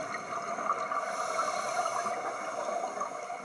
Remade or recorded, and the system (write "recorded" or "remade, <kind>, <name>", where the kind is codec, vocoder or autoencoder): recorded